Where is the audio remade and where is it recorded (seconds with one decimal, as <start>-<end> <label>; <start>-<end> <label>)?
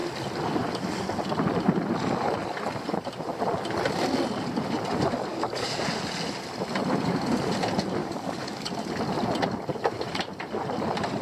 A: 0.0-5.3 recorded; 5.3-5.8 remade; 5.8-8.0 recorded; 8.0-8.7 remade; 8.7-11.2 recorded